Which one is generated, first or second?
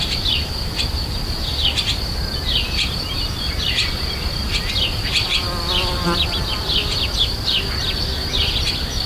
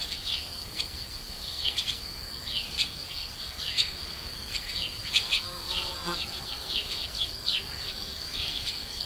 second